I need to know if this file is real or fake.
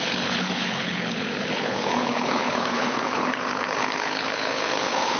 fake